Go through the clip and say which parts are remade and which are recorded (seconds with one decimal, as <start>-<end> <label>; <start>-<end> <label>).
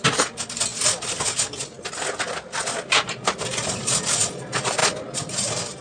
0.0-5.8 recorded